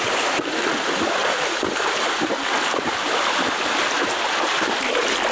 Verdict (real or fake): real